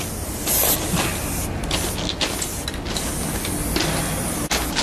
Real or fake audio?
real